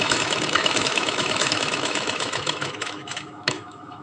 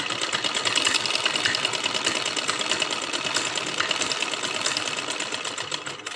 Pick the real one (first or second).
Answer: second